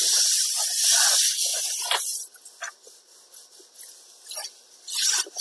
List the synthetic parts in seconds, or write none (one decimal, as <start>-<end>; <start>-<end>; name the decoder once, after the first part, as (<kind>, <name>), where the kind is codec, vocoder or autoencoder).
none